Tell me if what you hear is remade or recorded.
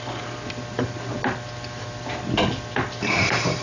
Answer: recorded